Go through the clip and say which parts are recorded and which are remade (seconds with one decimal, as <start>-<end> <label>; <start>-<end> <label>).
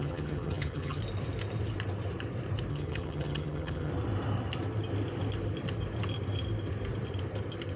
0.0-1.0 remade; 1.0-2.7 recorded; 2.7-3.9 remade; 3.9-7.8 recorded